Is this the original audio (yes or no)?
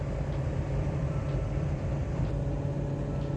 yes